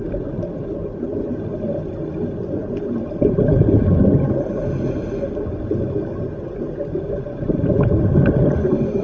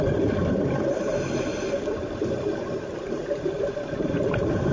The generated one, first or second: second